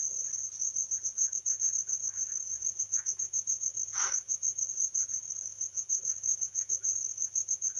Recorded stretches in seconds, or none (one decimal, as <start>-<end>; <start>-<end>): 0.0-1.2; 4.7-5.2